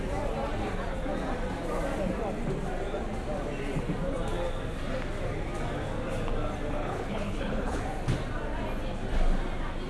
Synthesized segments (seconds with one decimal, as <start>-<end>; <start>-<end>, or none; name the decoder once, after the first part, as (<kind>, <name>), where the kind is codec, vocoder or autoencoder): 6.8-7.8 (codec, HILCodec)